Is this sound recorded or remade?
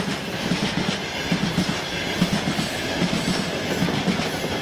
recorded